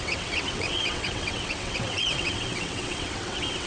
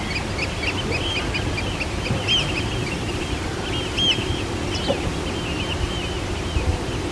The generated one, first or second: first